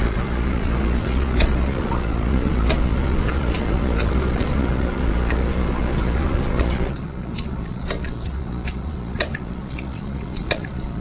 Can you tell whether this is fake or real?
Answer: fake